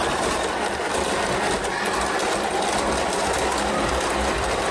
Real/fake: fake